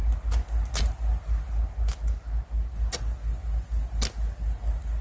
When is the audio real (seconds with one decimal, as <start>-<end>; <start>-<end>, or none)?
0.0-5.0